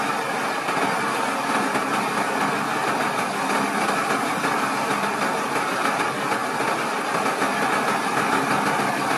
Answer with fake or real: real